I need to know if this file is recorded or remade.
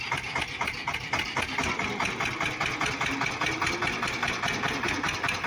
recorded